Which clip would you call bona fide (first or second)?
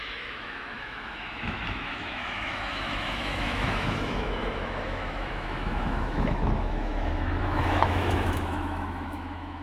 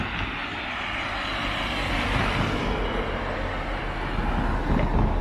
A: second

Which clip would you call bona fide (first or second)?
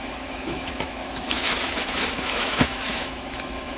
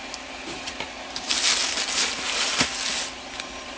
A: second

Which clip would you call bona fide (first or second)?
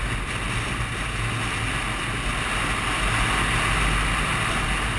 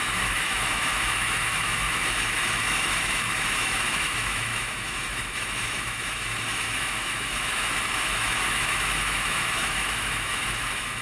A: first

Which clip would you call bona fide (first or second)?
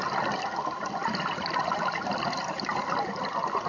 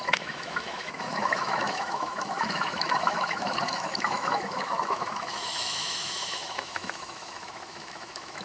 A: first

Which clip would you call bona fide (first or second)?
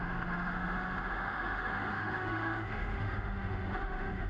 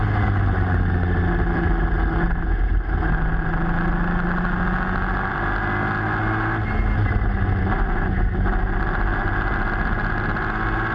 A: second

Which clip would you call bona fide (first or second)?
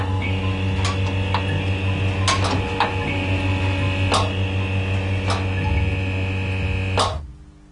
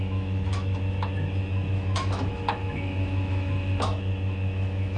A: first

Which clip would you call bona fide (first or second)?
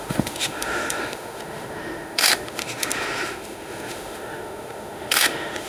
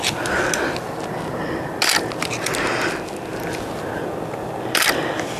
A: second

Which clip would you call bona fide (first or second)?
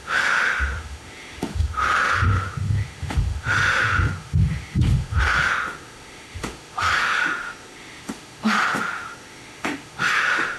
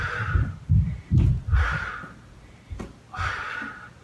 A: second